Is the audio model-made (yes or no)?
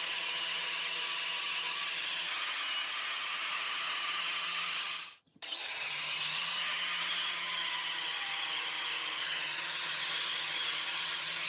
yes